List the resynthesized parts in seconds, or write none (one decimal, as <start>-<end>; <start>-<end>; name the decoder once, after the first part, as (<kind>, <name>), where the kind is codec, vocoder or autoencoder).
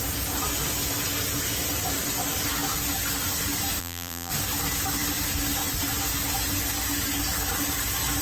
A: 3.8-4.3 (vocoder, BigVGAN v2)